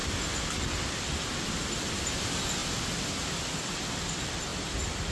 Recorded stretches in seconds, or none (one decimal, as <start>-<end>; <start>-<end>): 0.0-5.1